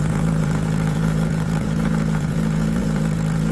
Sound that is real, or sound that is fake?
fake